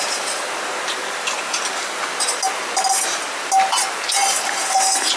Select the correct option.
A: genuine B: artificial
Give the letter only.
A